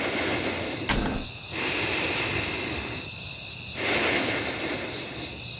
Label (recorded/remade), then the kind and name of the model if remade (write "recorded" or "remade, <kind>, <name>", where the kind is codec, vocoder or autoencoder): recorded